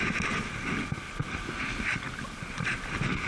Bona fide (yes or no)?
yes